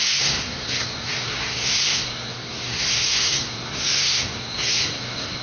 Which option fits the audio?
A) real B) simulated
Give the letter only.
B